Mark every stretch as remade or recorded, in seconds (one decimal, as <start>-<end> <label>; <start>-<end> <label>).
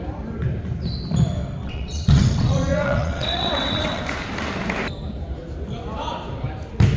0.0-1.6 recorded; 1.6-4.0 remade; 4.0-7.0 recorded